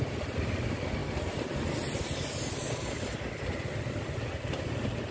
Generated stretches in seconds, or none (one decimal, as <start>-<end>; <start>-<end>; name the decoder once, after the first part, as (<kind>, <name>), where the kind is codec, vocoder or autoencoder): none